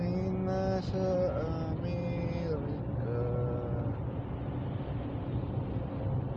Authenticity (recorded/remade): recorded